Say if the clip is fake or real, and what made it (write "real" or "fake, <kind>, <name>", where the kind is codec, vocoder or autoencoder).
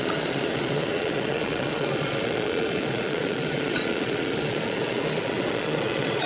fake, vocoder, Vocos